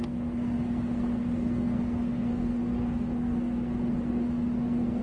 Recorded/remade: remade